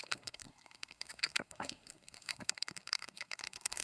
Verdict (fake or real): fake